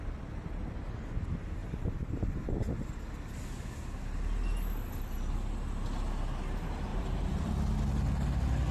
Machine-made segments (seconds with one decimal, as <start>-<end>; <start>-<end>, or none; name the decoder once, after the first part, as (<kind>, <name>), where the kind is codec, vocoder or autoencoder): 1.6-2.5 (vocoder, BigVGAN v2); 6.9-7.5